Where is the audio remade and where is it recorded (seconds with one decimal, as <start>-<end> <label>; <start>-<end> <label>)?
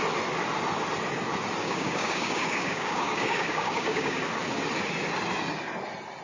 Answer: 0.0-1.6 recorded; 1.6-4.2 remade; 4.2-6.2 recorded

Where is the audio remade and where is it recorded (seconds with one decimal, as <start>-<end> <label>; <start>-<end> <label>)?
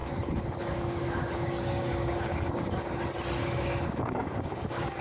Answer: 0.0-3.0 remade; 3.0-3.4 recorded; 3.4-5.0 remade